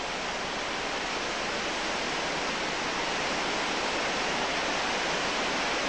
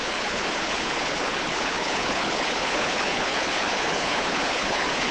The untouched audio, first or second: first